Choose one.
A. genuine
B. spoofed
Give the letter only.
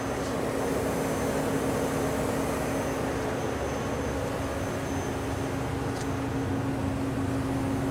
A